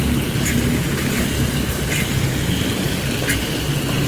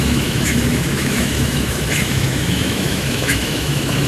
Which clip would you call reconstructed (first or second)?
second